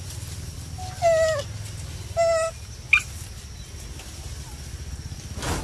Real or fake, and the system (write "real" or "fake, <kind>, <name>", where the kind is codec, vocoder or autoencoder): real